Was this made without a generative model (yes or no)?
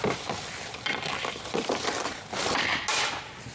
yes